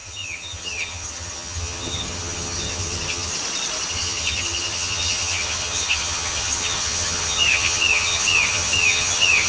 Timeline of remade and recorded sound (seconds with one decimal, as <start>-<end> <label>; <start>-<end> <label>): 0.0-3.3 remade; 3.3-3.9 recorded; 3.9-9.5 remade